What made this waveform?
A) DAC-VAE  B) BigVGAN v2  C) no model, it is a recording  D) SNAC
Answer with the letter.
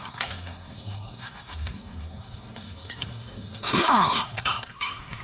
D